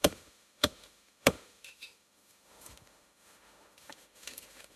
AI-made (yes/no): yes